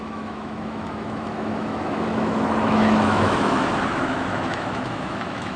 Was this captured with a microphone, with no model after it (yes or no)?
no